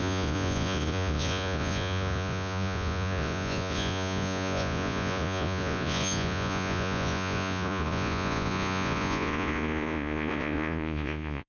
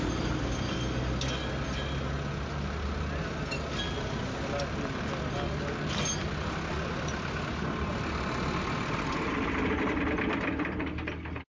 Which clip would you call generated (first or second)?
first